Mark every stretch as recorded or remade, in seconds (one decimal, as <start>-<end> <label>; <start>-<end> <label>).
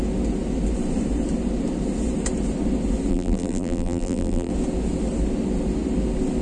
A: 0.0-3.1 recorded; 3.1-4.5 remade; 4.5-6.4 recorded